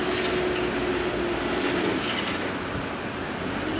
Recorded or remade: recorded